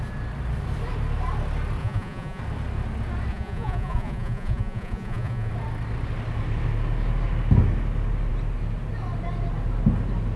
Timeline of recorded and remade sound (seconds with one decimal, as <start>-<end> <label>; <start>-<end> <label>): 0.0-1.8 recorded; 1.8-2.4 remade; 2.4-3.3 recorded; 3.3-5.5 remade; 5.5-10.4 recorded